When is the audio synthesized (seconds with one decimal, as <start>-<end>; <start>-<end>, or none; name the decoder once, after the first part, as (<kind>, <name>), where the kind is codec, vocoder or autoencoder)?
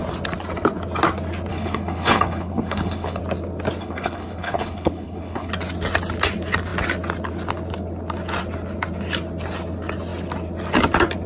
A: 1.5-3.2 (codec, HILCodec); 3.8-5.5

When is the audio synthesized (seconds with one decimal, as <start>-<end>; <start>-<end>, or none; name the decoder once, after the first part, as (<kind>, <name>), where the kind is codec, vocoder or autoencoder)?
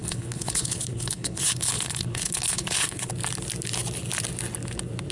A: 0.0-3.1 (codec, HILCodec)